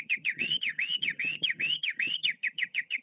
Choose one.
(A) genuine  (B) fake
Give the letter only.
B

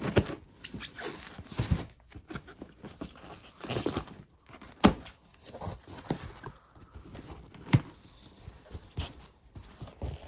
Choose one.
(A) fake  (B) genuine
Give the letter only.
B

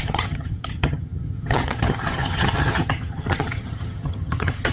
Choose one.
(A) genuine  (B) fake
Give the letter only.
B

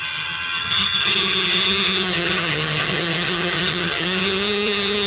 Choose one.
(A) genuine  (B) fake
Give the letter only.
B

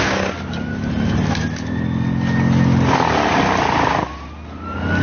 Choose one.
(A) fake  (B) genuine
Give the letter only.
B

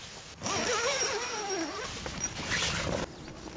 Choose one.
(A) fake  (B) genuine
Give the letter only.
B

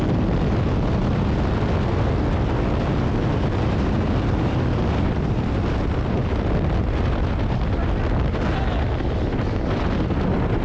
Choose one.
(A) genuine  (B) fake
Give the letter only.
A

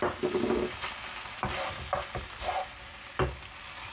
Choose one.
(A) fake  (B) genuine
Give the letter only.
B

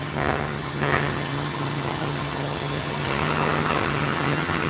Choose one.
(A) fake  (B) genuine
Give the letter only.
A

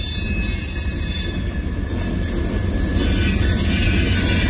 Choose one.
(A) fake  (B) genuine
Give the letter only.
B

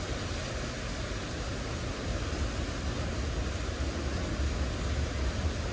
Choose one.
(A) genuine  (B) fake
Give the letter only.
A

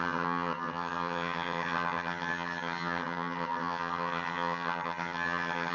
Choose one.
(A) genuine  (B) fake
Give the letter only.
B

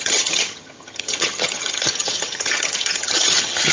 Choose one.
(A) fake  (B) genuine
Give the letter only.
A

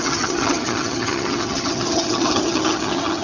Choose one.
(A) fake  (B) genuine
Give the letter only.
A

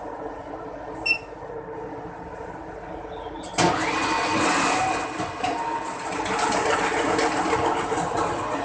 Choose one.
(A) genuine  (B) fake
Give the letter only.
A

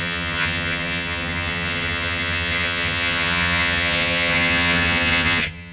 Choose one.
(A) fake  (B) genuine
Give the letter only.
A